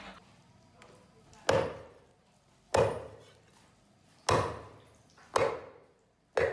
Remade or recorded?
recorded